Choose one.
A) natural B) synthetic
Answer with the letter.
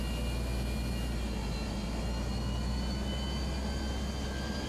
A